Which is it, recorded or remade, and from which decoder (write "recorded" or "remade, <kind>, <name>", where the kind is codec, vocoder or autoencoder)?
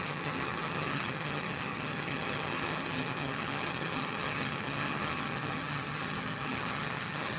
remade, vocoder, HiFi-GAN